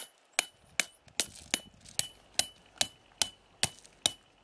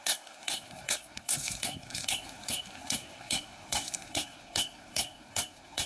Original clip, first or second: first